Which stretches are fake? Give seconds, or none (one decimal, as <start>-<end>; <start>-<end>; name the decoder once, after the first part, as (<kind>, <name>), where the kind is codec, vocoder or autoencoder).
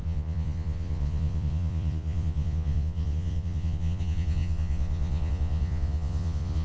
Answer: 0.0-6.6 (vocoder, Vocos)